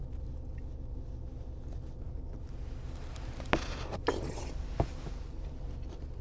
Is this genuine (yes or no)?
yes